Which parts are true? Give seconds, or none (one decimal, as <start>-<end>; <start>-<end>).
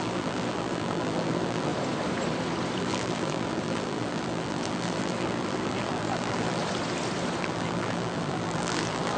1.7-2.8; 6.6-7.4